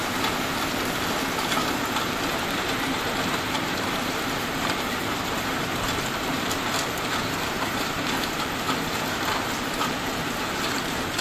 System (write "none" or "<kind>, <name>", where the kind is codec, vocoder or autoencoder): vocoder, BigVGAN v2